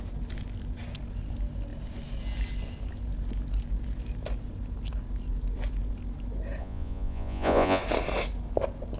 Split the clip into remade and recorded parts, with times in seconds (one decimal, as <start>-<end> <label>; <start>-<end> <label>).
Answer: 0.0-6.6 recorded; 6.6-7.8 remade; 7.8-9.0 recorded